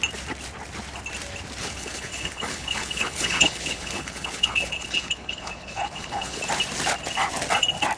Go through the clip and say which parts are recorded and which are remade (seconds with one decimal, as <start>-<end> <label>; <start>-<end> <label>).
0.0-1.6 recorded; 1.6-6.4 remade; 6.4-8.0 recorded